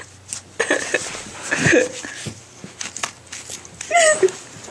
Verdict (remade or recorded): recorded